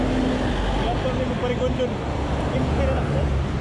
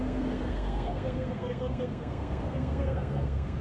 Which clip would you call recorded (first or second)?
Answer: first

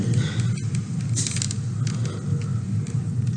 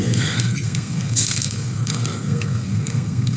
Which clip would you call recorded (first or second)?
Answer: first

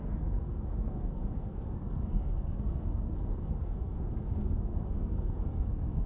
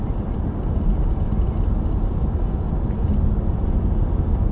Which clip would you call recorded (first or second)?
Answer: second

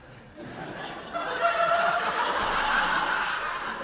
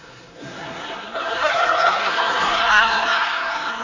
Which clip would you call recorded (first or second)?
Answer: first